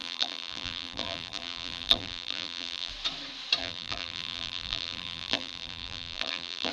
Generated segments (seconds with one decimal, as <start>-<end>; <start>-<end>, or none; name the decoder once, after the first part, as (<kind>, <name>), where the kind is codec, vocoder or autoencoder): 0.0-2.9 (vocoder, BigVGAN v2); 3.6-6.7